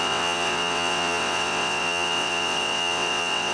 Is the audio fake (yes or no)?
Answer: yes